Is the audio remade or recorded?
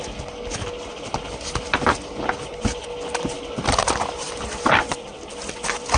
recorded